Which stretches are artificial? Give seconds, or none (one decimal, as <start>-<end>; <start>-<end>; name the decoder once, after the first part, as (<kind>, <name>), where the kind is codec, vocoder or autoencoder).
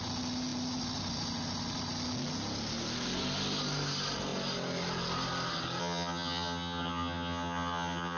5.8-8.2 (vocoder, HiFi-GAN)